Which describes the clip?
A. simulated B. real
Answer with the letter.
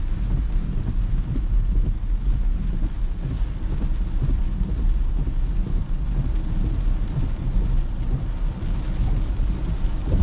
B